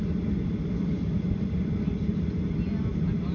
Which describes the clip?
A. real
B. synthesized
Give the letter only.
A